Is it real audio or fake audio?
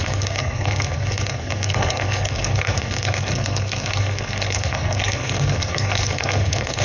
fake